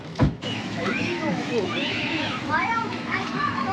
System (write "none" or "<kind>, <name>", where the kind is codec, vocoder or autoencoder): autoencoder, DAC-VAE